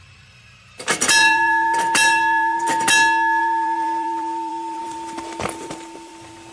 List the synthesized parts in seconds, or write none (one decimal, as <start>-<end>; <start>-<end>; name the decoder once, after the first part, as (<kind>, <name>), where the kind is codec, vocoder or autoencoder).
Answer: 0.0-2.7 (vocoder, BigVGAN v2); 3.4-6.5